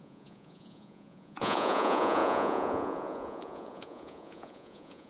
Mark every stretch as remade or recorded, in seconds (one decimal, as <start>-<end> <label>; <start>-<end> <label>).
0.0-5.1 remade